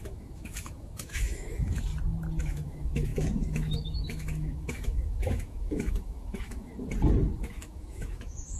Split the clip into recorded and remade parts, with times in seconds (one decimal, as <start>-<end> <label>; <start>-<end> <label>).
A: 0.0-1.9 remade; 1.9-2.4 recorded; 2.4-6.7 remade; 6.7-7.4 recorded; 7.4-8.6 remade